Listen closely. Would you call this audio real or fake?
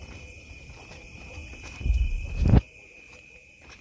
fake